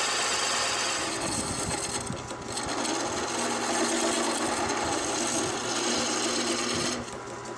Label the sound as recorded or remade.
recorded